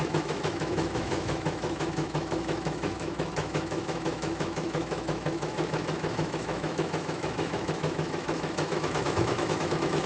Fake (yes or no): yes